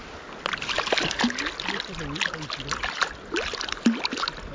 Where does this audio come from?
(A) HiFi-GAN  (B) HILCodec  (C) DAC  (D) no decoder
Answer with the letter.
D